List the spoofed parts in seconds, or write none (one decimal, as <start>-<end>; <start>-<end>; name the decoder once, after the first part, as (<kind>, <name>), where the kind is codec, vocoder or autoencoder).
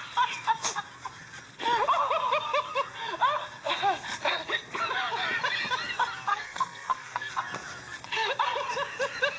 6.3-7.3 (codec, SNAC)